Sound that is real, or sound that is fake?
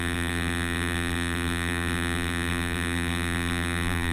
fake